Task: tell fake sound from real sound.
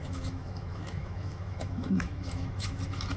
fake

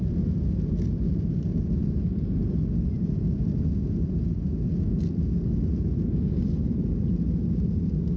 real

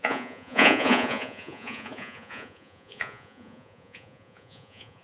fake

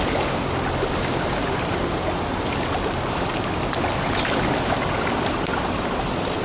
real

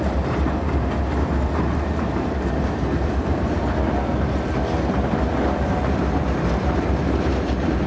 fake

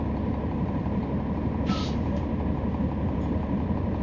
real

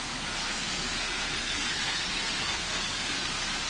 fake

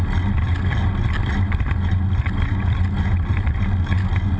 real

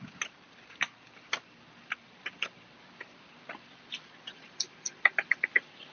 real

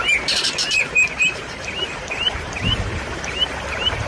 fake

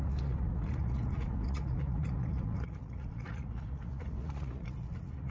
fake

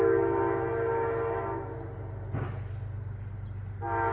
real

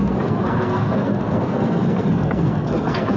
fake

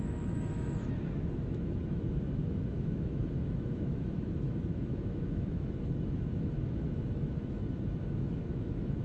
fake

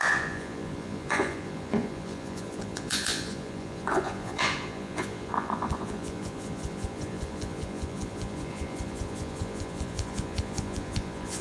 fake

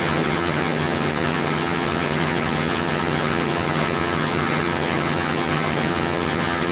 fake